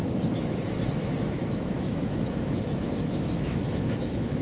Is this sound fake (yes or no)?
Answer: yes